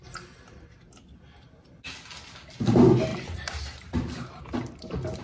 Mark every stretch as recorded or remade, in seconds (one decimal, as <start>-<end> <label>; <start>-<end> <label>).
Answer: 0.0-3.1 recorded; 3.1-4.4 remade; 4.4-5.2 recorded